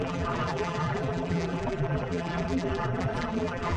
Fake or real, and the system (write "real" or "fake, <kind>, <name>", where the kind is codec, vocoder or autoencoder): fake, vocoder, BigVGAN v2